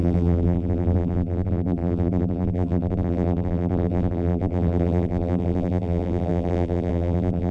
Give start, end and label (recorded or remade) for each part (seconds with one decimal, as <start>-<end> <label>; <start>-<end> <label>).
0.0-7.5 remade